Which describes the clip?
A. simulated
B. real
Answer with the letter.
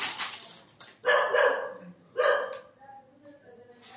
B